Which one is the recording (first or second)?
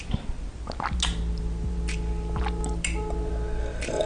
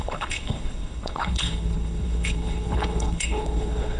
first